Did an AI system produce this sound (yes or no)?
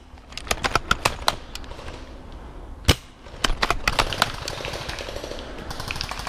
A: no